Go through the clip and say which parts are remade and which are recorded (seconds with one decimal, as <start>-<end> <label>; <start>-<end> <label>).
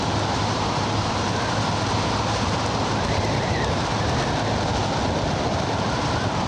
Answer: 0.0-3.9 remade; 3.9-5.7 recorded; 5.7-6.5 remade